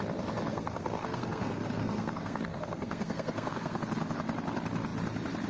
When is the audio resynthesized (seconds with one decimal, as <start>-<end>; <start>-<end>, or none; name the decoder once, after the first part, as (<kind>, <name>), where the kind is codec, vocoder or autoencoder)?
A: 0.5-3.8 (codec, SNAC)